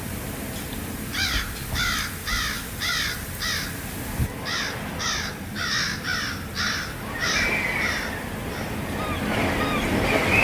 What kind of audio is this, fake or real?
real